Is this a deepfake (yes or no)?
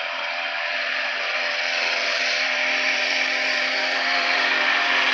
yes